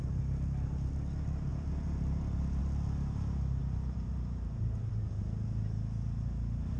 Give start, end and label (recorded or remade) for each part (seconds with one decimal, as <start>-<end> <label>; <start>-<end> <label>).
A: 0.0-1.5 recorded; 1.5-2.6 remade; 2.6-3.6 recorded; 3.6-4.9 remade; 4.9-6.8 recorded